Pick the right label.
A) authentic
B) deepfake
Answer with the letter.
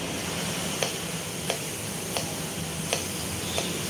A